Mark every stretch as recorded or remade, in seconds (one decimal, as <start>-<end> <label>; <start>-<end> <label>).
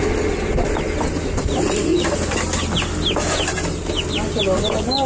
0.0-5.1 recorded